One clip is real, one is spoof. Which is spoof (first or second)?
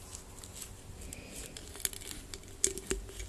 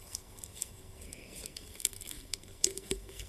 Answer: second